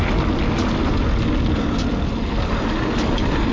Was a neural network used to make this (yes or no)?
no